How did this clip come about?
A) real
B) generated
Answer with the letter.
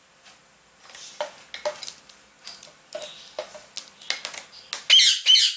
A